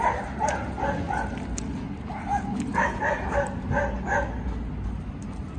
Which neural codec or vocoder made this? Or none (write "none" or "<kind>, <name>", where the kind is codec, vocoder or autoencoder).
none